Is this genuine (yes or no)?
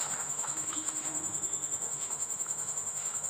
no